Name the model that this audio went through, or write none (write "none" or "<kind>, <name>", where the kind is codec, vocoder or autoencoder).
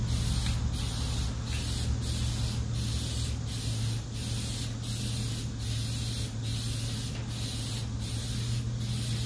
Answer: none